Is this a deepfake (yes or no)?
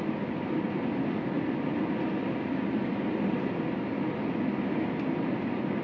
no